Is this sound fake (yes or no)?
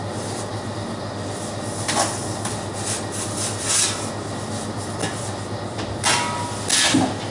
no